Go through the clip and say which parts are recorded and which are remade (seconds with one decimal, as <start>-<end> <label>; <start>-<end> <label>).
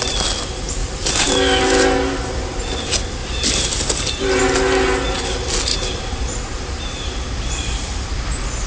0.0-0.8 recorded; 0.8-1.3 remade; 1.3-3.2 recorded; 3.2-4.4 remade; 4.4-5.7 recorded; 5.7-8.0 remade; 8.0-8.7 recorded